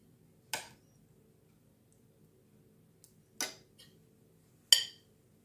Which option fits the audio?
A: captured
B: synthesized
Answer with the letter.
A